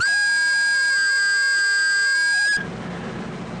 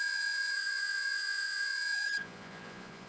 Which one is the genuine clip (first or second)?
first